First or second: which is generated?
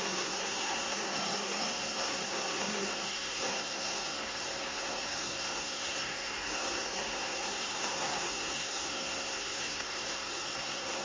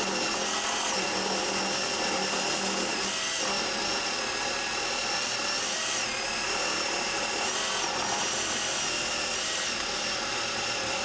first